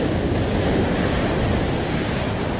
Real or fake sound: real